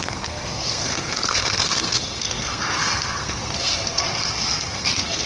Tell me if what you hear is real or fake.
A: fake